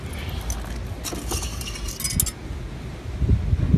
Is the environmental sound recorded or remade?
recorded